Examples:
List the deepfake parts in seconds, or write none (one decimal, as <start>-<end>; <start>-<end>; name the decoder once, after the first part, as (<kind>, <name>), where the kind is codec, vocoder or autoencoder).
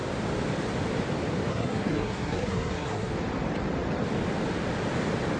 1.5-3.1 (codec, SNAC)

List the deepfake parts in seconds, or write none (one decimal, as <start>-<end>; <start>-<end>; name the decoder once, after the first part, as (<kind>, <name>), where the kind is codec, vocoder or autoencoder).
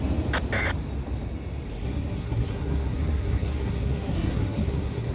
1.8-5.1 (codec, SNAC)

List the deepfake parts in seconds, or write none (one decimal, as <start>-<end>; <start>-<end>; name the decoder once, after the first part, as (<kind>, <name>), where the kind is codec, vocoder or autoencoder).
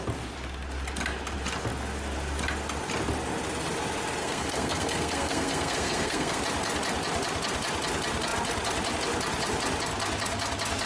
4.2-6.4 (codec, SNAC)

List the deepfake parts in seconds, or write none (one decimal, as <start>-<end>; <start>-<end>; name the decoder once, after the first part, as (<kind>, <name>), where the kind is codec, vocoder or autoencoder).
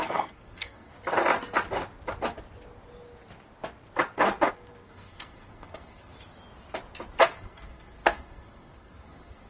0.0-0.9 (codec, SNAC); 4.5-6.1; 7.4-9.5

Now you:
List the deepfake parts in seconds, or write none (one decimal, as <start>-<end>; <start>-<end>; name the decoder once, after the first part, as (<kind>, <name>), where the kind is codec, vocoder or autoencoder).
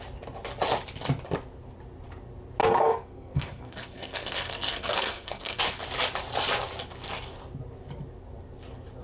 2.6-5.6 (codec, SNAC)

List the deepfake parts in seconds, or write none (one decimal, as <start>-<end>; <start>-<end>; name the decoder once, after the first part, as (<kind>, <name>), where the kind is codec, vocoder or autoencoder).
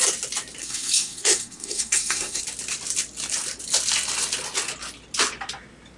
0.6-2.4 (codec, SNAC)